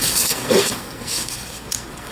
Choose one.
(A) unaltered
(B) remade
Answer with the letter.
B